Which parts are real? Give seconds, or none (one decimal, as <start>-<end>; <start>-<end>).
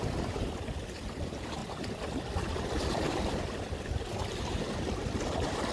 0.0-1.6; 3.8-4.2; 5.2-5.7